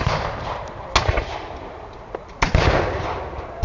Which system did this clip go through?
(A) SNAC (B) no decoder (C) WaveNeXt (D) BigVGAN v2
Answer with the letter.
B